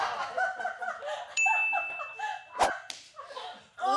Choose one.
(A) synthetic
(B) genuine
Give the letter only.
B